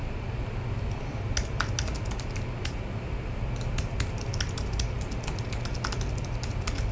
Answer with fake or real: real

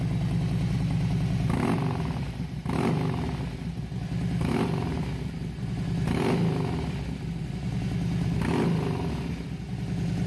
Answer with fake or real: real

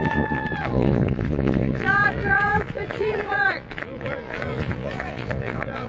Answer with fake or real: fake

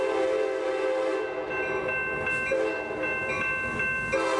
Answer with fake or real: real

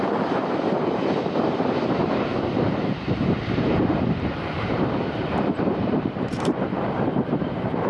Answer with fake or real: fake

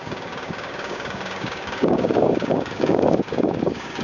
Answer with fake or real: fake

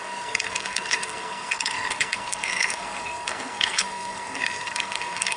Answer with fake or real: fake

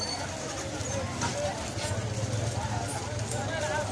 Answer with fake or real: real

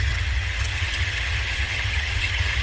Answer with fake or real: fake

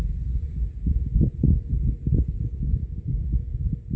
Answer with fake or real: real